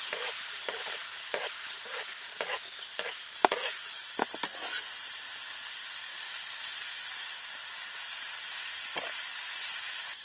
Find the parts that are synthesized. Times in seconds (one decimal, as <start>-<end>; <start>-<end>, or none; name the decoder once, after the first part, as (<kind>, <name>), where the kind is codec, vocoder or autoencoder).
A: 2.9-4.0 (vocoder, BigVGAN v2)